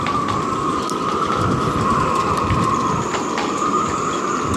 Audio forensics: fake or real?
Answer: real